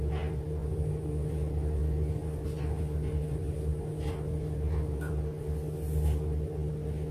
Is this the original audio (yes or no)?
yes